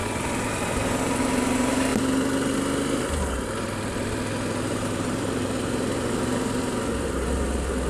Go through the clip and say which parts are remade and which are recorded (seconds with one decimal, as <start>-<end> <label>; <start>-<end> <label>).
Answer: 0.0-1.9 remade; 1.9-4.6 recorded; 4.6-6.7 remade; 6.7-7.9 recorded

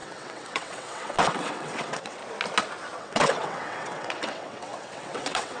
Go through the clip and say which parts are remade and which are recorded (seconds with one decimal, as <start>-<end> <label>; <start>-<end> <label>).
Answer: 0.0-2.2 remade; 2.2-3.0 recorded; 3.0-5.6 remade

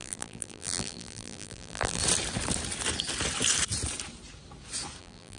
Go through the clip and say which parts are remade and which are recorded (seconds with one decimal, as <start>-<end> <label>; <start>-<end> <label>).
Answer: 0.0-2.0 remade; 2.0-5.0 recorded; 5.0-5.4 remade

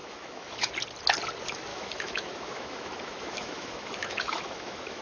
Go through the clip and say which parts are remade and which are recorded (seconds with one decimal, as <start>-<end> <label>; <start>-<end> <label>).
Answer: 0.0-0.7 remade; 0.7-1.7 recorded; 1.7-5.0 remade

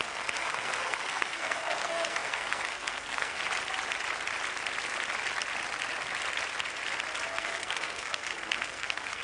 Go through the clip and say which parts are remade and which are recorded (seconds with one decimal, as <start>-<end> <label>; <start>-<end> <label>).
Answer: 0.0-3.4 remade; 3.4-7.3 recorded; 7.3-9.2 remade

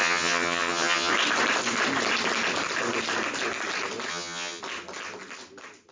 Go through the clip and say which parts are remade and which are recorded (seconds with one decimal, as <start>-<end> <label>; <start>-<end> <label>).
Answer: 0.0-1.1 remade; 1.1-4.1 recorded; 4.1-4.6 remade; 4.6-5.9 recorded

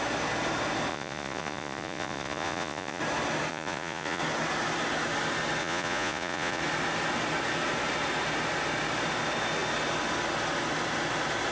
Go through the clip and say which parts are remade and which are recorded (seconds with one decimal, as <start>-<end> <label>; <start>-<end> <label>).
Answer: 0.0-0.9 recorded; 0.9-3.0 remade; 3.0-3.5 recorded; 3.5-4.2 remade; 4.2-5.6 recorded; 5.6-6.6 remade; 6.6-11.5 recorded

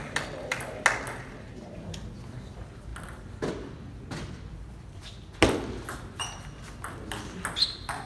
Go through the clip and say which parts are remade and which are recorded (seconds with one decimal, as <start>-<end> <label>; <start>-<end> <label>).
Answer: 0.0-8.1 recorded